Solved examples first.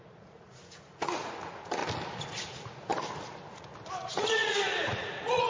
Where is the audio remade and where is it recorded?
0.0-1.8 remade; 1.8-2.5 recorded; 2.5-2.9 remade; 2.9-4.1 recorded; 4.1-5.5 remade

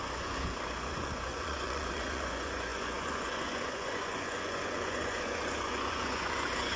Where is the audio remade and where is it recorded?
0.0-6.8 remade

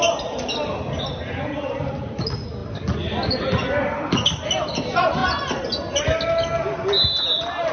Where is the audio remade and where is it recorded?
0.0-7.7 recorded